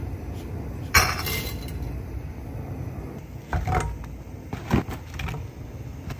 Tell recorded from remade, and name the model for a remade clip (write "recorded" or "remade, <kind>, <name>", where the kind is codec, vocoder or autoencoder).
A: recorded